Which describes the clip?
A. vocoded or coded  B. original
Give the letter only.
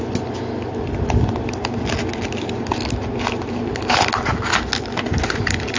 B